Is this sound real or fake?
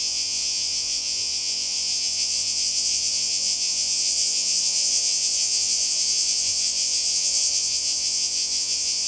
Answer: fake